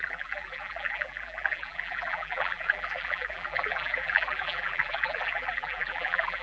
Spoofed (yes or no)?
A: yes